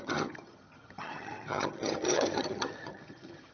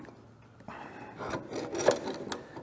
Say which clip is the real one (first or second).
second